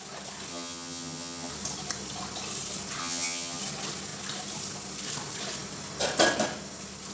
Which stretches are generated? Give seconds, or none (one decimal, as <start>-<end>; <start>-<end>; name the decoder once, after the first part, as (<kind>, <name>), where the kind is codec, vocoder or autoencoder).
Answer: 0.5-1.5 (vocoder, HiFi-GAN); 3.0-3.6